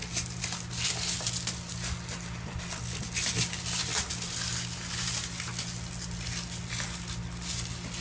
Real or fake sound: real